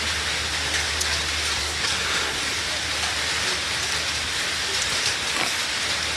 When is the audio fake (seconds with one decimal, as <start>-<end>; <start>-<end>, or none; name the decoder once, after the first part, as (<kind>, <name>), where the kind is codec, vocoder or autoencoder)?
1.6-2.4 (codec, SNAC)